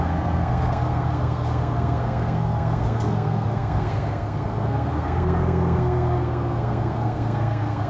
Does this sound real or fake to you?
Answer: fake